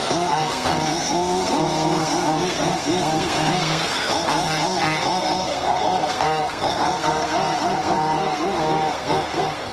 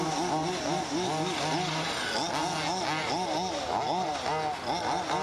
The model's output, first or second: first